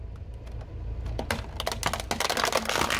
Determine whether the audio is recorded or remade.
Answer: recorded